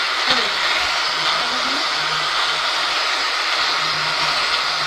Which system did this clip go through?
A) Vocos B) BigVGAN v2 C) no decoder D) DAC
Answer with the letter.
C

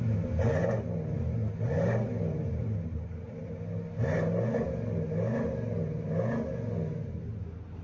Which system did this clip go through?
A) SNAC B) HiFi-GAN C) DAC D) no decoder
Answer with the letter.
D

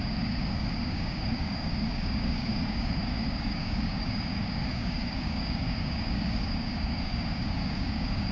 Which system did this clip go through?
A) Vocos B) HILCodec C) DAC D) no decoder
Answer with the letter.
C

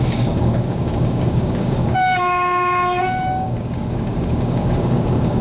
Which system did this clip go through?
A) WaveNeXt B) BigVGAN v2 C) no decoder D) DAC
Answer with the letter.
D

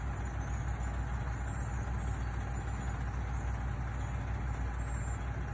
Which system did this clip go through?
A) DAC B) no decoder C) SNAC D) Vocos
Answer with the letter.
B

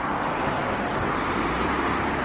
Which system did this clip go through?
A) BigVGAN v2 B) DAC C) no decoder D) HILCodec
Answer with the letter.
C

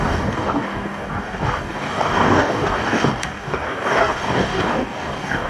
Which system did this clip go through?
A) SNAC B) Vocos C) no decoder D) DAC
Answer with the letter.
D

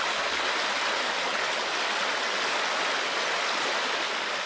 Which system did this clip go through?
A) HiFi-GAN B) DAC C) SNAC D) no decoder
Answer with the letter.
D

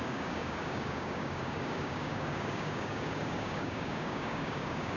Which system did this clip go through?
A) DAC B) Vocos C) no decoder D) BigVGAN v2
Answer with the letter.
A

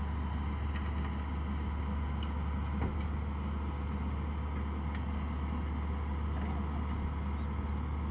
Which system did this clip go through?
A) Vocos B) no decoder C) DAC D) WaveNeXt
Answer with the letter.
B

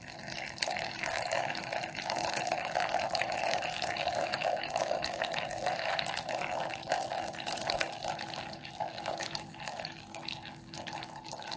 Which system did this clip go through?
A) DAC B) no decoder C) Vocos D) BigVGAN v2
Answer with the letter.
A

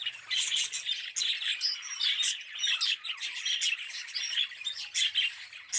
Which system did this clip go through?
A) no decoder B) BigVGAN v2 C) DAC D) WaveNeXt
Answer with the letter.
A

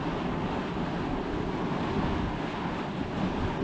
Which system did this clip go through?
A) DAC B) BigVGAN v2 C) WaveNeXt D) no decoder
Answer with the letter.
D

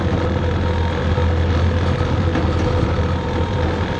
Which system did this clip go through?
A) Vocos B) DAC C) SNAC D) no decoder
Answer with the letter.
D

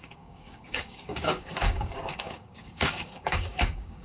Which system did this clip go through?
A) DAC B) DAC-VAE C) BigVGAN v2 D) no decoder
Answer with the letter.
A